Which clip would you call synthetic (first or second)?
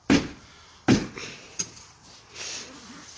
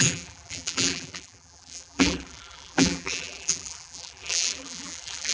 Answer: second